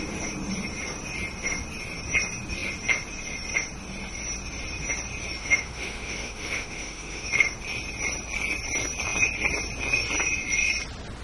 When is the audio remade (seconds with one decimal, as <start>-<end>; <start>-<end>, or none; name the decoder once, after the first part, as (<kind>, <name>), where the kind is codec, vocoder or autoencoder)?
5.4-7.3 (autoencoder, DAC-VAE)